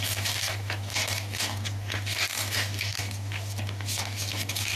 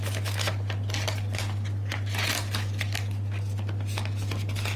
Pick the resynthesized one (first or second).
first